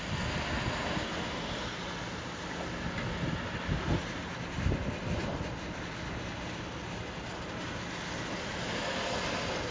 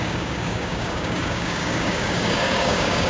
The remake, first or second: second